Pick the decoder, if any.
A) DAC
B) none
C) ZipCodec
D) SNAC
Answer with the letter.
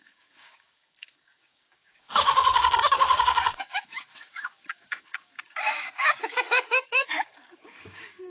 A